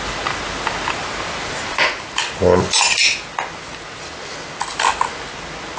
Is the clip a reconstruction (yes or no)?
no